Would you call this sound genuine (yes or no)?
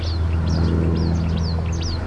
yes